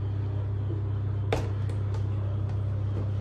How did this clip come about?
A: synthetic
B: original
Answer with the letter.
B